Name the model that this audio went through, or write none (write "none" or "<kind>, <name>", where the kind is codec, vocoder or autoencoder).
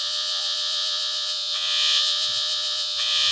vocoder, Vocos